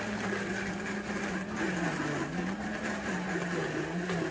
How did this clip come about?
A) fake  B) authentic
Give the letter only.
B